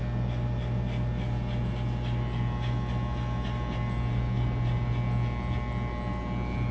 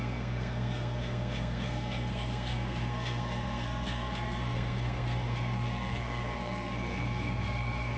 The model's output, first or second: second